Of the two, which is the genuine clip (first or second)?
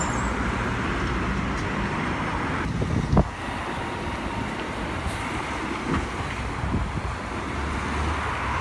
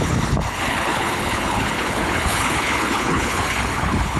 first